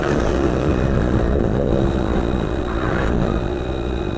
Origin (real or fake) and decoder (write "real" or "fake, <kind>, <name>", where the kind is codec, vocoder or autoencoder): fake, vocoder, Vocos